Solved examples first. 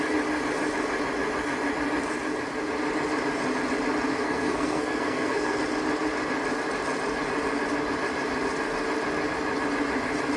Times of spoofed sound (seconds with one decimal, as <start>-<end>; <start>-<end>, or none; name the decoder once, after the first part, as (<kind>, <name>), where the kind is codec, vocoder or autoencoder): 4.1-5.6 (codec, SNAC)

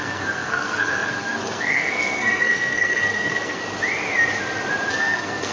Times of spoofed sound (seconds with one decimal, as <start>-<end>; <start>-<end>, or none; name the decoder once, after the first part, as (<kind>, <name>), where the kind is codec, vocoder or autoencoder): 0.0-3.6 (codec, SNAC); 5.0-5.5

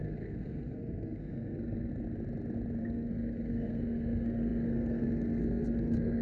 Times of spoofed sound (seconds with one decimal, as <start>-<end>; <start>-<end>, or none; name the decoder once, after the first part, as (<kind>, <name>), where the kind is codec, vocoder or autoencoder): 0.0-1.9 (codec, SNAC); 2.8-6.2